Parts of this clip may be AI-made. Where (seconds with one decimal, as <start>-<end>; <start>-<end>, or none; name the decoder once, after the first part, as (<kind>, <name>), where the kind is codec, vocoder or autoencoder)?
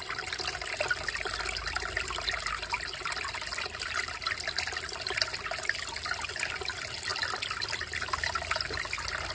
none